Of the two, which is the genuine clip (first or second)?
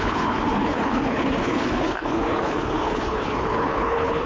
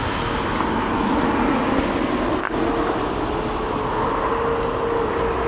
second